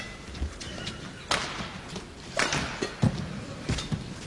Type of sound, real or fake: real